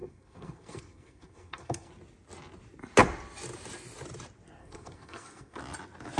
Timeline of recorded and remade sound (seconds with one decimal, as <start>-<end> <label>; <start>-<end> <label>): 0.0-1.9 remade; 1.9-4.6 recorded; 4.6-5.6 remade; 5.6-6.2 recorded